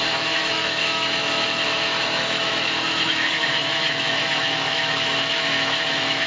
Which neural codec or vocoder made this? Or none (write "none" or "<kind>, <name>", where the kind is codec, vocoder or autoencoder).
autoencoder, DAC-VAE